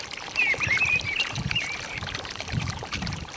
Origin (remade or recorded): remade